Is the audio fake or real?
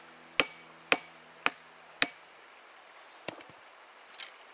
real